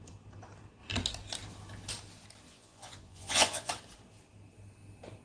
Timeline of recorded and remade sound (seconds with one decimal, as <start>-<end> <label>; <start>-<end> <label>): 0.0-2.5 recorded; 2.5-3.7 remade; 3.7-5.2 recorded